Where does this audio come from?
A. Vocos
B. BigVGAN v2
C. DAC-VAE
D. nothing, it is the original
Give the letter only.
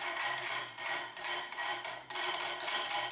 B